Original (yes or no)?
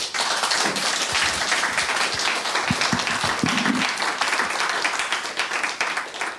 yes